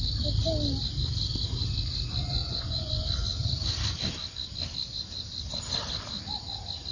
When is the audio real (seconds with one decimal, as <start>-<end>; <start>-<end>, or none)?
0.0-2.4; 2.9-6.9